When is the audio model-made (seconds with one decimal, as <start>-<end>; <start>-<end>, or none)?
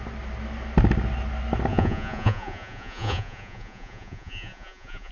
1.7-5.1